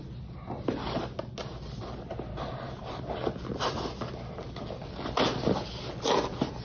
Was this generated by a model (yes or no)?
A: no